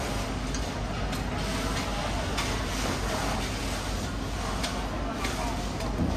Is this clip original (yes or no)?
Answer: yes